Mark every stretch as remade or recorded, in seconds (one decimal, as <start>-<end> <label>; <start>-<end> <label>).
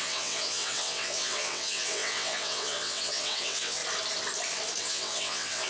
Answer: 0.0-3.8 remade; 3.8-4.8 recorded; 4.8-5.7 remade